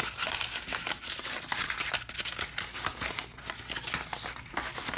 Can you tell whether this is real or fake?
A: real